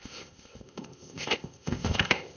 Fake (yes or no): yes